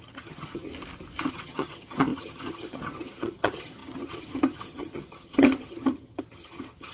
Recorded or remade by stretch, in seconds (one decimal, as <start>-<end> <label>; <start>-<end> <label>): 0.0-0.7 remade; 0.7-1.3 recorded; 1.3-6.9 remade